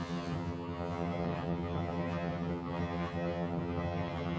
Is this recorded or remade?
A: remade